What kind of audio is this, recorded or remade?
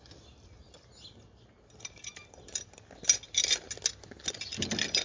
recorded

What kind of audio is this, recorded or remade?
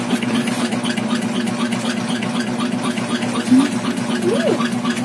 recorded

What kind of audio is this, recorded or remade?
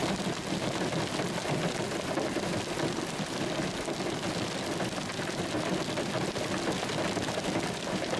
recorded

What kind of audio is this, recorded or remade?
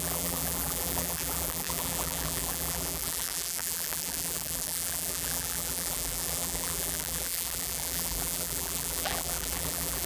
remade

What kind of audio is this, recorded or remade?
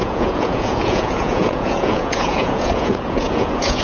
remade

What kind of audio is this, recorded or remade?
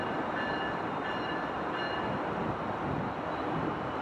recorded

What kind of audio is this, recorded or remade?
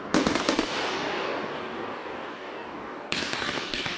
remade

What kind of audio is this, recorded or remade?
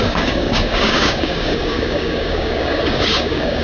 remade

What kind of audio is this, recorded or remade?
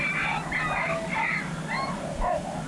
recorded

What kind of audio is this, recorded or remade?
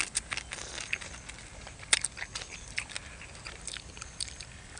recorded